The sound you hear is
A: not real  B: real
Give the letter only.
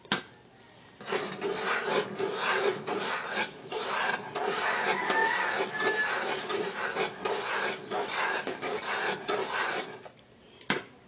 B